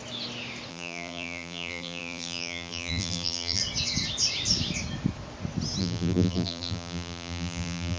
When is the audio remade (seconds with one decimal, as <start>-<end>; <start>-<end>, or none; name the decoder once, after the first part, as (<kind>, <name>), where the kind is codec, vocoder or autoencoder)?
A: 0.7-3.6 (vocoder, BigVGAN v2); 5.8-8.0